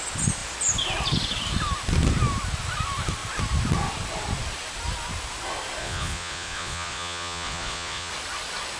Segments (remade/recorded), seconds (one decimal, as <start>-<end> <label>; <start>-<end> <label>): 0.0-5.8 recorded; 5.8-8.1 remade; 8.1-8.8 recorded